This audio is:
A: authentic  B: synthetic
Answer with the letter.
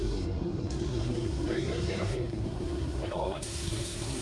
B